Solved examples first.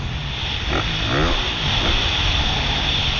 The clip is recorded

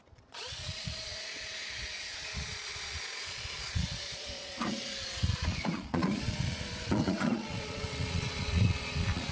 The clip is remade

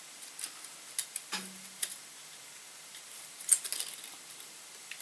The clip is recorded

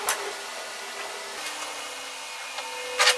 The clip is recorded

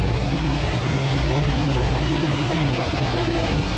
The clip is remade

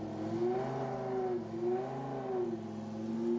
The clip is recorded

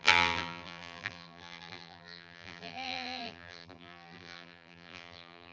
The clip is remade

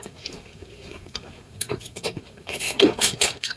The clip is remade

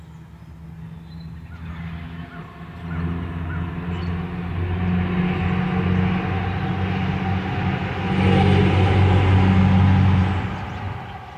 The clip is recorded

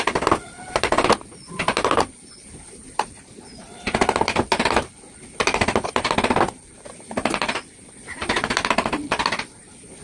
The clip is remade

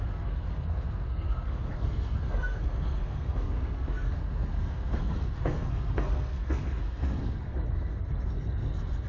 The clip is remade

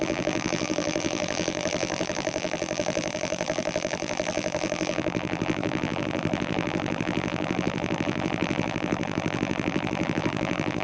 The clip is remade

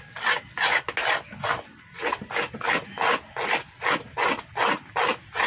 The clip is recorded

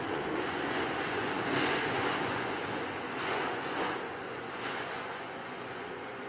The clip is remade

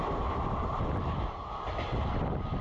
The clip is recorded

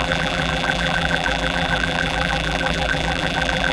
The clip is remade